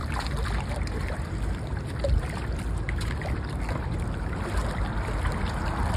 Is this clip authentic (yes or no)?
yes